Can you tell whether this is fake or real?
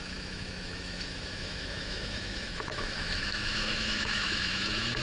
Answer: fake